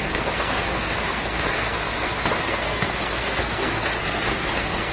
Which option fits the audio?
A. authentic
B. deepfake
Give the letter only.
B